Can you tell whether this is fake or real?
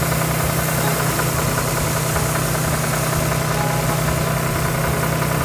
real